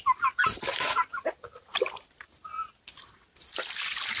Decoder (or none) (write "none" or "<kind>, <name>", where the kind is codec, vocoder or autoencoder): none